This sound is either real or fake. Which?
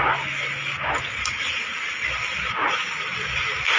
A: real